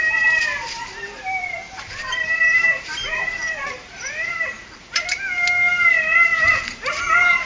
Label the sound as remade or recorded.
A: remade